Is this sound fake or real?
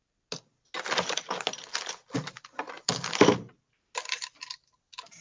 real